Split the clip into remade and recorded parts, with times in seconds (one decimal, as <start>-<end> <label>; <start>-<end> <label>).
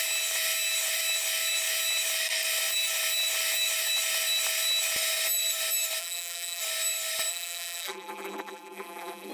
0.0-6.0 recorded; 6.0-6.6 remade; 6.6-7.3 recorded; 7.3-9.3 remade